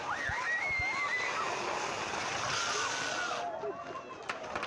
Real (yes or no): yes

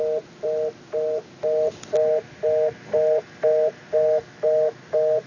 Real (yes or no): yes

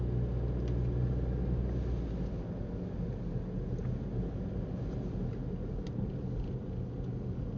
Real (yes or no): yes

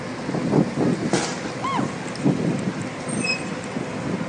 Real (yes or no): yes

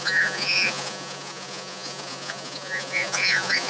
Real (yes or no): no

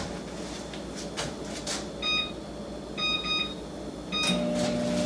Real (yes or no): yes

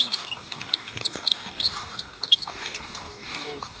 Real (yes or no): no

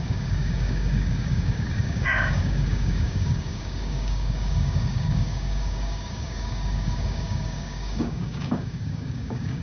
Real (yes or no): no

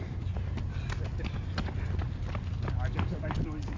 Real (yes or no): yes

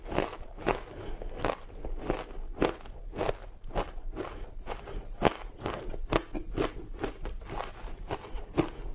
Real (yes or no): yes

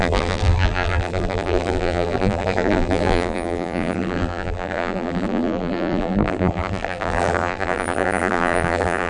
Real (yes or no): no